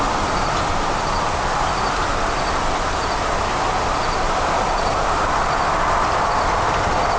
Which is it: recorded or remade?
recorded